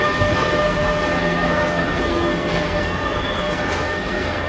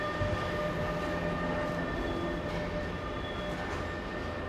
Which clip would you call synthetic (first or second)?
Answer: first